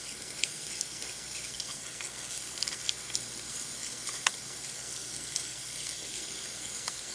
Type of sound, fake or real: fake